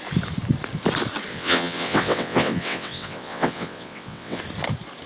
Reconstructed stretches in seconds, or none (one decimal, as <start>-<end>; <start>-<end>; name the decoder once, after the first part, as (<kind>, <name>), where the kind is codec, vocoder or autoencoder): 1.3-4.4 (vocoder, WaveNeXt)